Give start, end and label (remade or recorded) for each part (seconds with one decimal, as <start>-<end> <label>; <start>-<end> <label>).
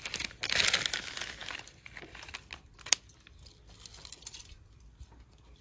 0.0-5.6 recorded